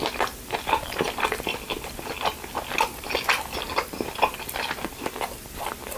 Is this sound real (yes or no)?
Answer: yes